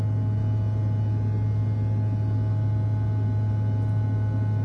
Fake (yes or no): no